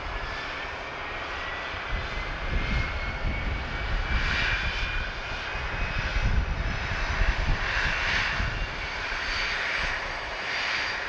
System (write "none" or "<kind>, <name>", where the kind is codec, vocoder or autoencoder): none